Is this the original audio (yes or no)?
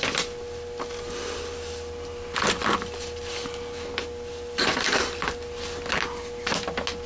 yes